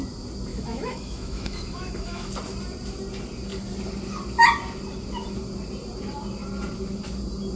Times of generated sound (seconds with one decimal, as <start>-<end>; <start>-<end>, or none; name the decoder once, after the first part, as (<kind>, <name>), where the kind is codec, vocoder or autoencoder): 0.5-2.3 (autoencoder, DAC-VAE)